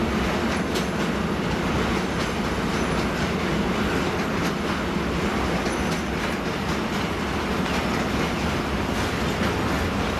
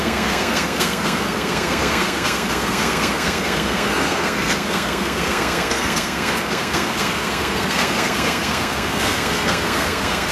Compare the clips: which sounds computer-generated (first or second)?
second